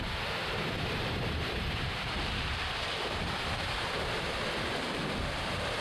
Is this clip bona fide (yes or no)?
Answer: no